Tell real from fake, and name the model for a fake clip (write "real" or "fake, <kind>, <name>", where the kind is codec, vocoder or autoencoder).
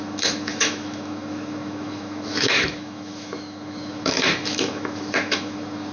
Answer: fake, autoencoder, DAC-VAE